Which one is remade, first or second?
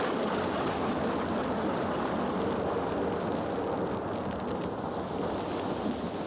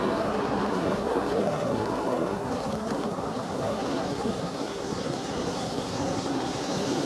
second